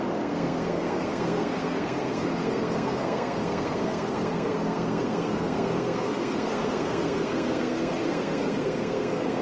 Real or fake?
fake